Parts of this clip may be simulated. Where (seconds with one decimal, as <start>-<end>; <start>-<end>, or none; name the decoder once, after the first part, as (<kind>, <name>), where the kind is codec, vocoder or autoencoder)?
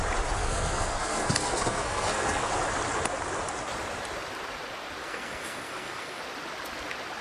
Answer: 0.4-2.5 (codec, SNAC); 5.0-6.2